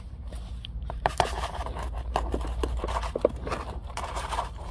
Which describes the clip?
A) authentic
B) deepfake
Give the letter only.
B